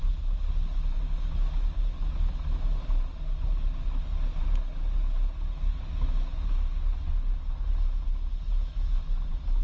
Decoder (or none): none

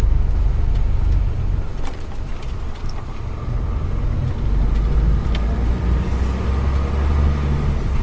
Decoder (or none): none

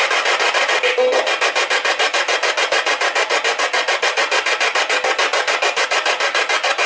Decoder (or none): none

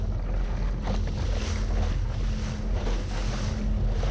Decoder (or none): none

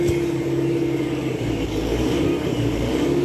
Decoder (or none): codec, DAC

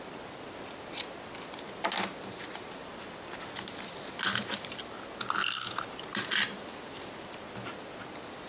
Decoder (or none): none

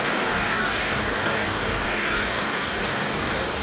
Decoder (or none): codec, DAC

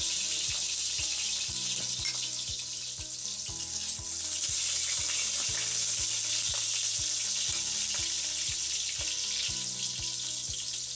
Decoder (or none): none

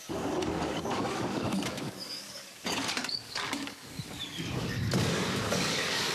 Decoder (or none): codec, DAC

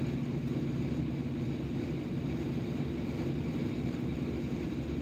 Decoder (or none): none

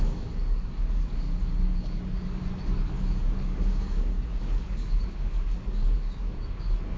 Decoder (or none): codec, DAC